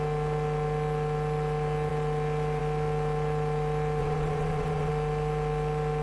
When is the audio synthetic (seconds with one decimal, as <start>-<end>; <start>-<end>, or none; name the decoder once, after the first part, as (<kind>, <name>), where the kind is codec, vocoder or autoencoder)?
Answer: 4.0-4.9 (vocoder, WaveNeXt)